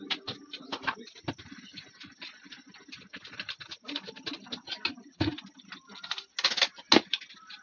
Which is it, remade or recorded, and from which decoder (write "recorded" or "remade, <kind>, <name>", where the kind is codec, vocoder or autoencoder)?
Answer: recorded